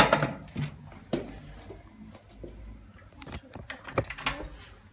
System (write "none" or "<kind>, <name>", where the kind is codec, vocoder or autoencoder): none